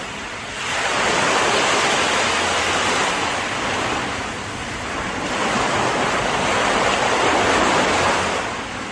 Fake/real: real